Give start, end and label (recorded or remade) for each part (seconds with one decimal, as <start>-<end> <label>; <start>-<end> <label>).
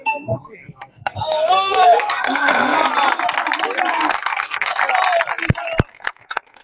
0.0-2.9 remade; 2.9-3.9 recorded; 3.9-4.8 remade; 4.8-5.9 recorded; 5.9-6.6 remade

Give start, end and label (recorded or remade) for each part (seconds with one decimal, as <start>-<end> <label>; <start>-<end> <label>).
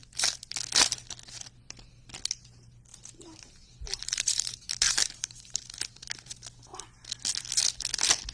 0.0-2.9 recorded; 2.9-5.6 remade; 5.6-8.3 recorded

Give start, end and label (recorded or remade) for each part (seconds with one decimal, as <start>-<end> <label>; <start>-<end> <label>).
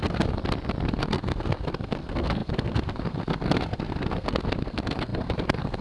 0.0-0.4 remade; 0.4-0.9 recorded; 0.9-5.8 remade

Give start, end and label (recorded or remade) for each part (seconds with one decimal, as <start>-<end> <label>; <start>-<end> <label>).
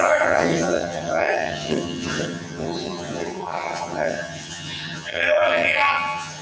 0.0-6.4 remade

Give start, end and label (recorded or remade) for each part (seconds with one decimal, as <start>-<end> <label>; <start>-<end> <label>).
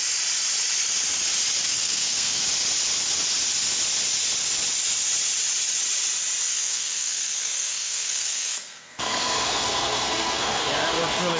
0.0-1.7 recorded; 1.7-2.4 remade; 2.4-6.5 recorded; 6.5-10.6 remade; 10.6-11.4 recorded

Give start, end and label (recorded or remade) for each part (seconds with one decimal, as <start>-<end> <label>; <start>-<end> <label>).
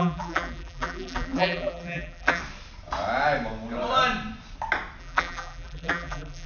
0.0-2.4 remade; 2.4-5.0 recorded; 5.0-6.5 remade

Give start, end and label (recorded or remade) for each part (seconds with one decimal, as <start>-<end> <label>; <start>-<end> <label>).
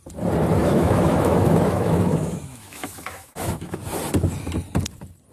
0.0-0.6 recorded; 0.6-3.8 remade; 3.8-5.3 recorded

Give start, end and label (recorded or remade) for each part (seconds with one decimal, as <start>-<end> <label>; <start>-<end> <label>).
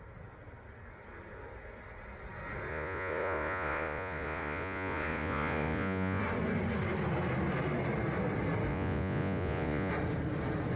0.0-2.7 recorded; 2.7-6.2 remade; 6.2-8.7 recorded; 8.7-9.9 remade; 9.9-10.8 recorded